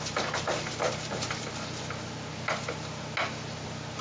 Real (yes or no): yes